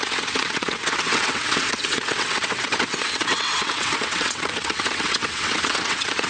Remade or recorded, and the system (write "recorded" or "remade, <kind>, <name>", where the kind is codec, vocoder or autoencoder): remade, vocoder, WaveNeXt